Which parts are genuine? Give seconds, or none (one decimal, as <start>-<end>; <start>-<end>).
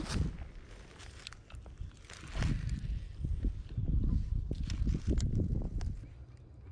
0.0-6.7